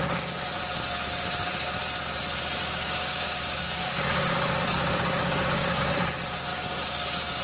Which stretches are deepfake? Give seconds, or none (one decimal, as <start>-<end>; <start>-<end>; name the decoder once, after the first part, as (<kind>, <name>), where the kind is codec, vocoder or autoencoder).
2.6-5.8 (codec, DAC); 6.5-7.4